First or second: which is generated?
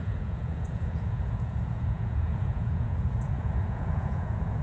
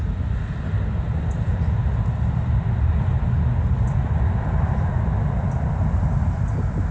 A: first